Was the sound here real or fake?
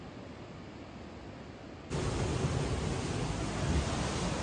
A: real